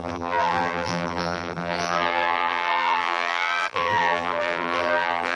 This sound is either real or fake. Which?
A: fake